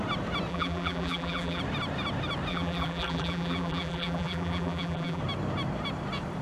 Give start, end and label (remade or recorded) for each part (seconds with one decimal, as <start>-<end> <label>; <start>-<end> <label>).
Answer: 0.0-0.5 recorded; 0.5-1.6 remade; 1.6-2.5 recorded; 2.5-5.2 remade; 5.2-6.4 recorded